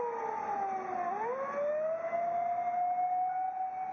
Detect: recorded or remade recorded